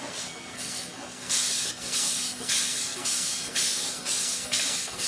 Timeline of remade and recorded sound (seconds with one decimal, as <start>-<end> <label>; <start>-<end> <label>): 0.0-5.1 remade